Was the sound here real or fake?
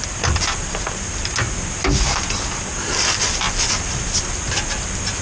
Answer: real